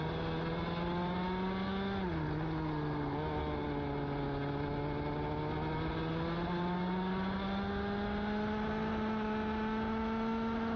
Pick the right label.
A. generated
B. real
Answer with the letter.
B